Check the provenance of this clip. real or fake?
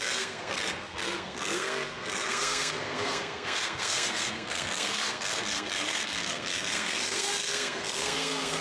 fake